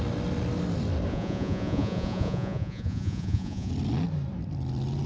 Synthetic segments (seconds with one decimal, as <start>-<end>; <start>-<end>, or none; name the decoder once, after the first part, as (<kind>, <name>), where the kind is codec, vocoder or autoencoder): 1.1-3.7 (vocoder, Vocos)